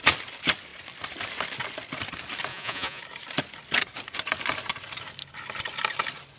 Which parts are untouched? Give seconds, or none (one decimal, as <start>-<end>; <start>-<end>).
0.0-2.5; 3.0-6.4